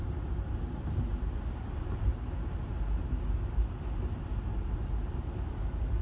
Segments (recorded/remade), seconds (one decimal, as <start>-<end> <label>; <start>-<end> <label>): 0.0-6.0 recorded